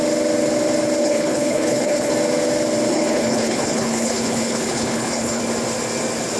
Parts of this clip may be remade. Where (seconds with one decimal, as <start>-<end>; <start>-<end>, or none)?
1.0-2.1; 2.9-5.4